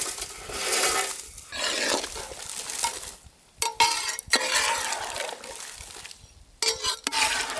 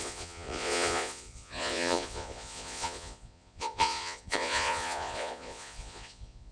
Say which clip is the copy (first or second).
second